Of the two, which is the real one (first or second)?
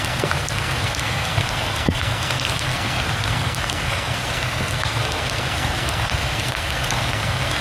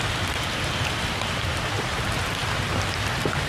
second